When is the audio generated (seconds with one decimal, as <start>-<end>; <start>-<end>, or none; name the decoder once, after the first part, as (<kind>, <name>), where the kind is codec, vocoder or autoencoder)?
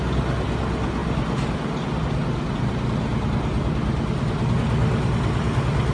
3.0-4.2 (vocoder, BigVGAN v2)